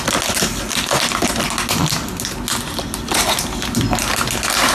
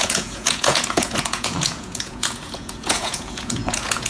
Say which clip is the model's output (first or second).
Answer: second